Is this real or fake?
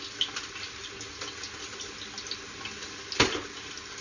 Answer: real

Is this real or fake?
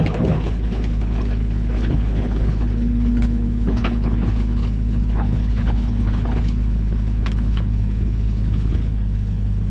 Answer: fake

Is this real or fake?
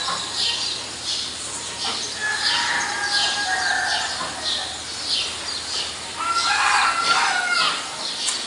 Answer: real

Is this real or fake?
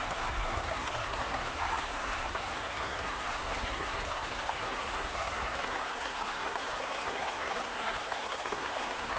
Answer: fake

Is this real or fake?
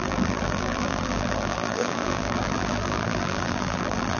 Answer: fake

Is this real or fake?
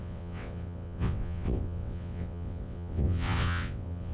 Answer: fake